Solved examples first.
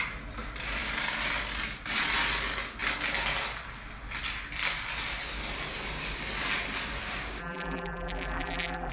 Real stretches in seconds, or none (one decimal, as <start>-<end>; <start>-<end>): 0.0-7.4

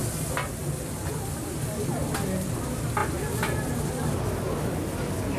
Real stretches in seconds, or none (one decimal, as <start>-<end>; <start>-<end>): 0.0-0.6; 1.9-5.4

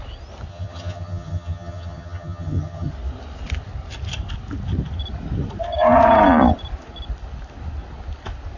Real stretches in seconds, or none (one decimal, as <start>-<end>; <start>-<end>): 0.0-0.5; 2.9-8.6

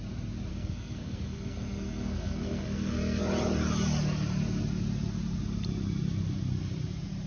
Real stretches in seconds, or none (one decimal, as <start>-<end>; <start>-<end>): 0.0-0.5; 3.2-7.3

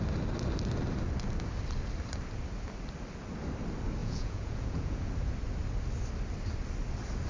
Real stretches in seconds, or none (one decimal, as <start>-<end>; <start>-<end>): 0.0-4.0; 5.1-7.3

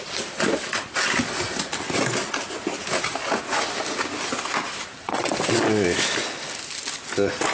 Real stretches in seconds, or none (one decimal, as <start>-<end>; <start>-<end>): 0.0-5.0; 5.6-7.5

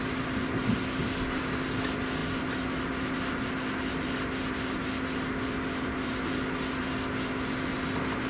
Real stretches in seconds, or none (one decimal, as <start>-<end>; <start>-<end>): 0.0-8.3

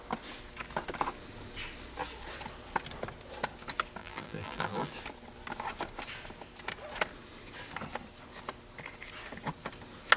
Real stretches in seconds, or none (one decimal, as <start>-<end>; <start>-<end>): 0.0-4.0; 4.9-10.2